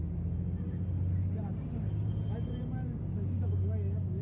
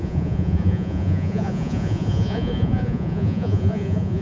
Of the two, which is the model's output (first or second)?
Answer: second